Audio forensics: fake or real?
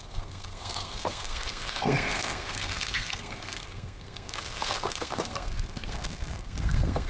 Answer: fake